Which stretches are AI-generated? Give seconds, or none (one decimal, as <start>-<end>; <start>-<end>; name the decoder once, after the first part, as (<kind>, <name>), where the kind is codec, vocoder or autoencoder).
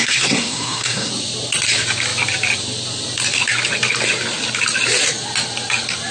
0.0-1.1 (codec, SNAC)